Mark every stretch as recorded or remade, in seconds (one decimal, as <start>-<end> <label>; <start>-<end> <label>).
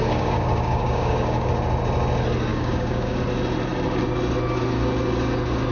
0.0-1.5 remade; 1.5-2.5 recorded; 2.5-3.2 remade; 3.2-5.7 recorded